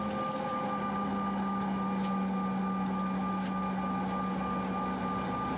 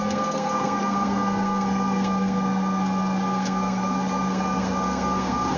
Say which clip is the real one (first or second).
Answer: first